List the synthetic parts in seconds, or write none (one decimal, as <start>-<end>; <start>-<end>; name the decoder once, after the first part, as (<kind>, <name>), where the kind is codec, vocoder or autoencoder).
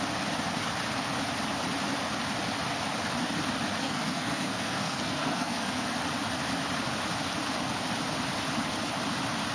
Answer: 3.8-5.8 (codec, SNAC)